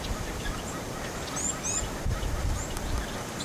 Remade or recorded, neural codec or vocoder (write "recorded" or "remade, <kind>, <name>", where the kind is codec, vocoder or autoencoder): recorded